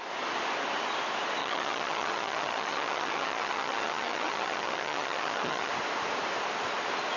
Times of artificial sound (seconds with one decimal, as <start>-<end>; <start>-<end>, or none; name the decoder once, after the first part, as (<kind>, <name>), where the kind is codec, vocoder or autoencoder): 1.4-5.7 (vocoder, HiFi-GAN)